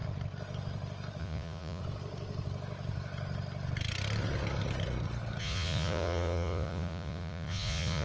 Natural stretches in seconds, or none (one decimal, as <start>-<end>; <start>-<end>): 0.0-1.2; 1.8-5.4